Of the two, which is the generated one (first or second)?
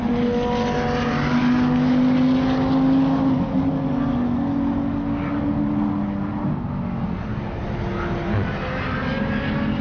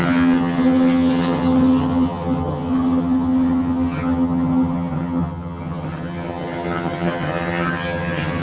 second